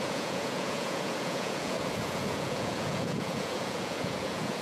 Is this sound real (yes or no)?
no